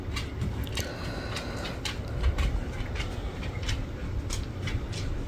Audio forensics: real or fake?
real